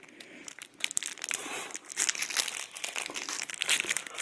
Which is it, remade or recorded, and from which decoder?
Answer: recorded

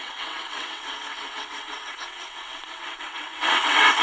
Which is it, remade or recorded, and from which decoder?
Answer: remade, vocoder, WaveNeXt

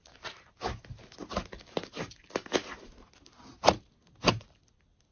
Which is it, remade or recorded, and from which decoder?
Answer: recorded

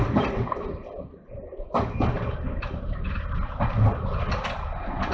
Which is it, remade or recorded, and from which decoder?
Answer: recorded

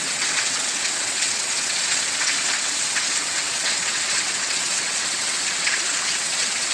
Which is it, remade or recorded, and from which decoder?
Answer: remade, vocoder, WaveNeXt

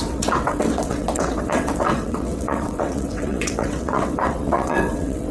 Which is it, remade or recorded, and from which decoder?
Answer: remade, vocoder, WaveNeXt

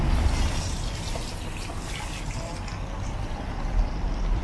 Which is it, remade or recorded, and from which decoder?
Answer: recorded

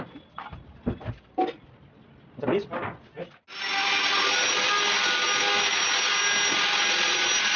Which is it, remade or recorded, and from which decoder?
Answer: recorded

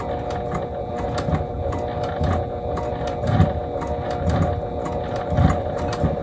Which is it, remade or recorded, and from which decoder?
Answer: recorded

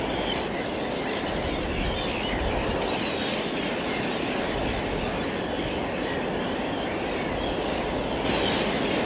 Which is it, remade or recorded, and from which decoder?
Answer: recorded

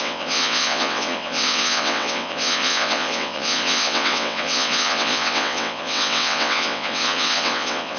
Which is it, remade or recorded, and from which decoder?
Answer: remade, vocoder, WaveNeXt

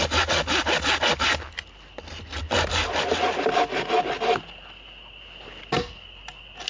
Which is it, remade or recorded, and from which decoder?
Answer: recorded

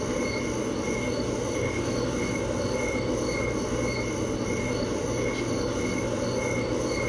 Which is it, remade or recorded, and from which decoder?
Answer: recorded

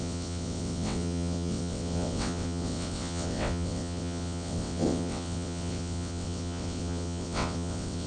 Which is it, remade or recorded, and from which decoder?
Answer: remade, vocoder, WaveNeXt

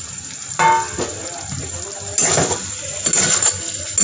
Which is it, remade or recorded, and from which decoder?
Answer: recorded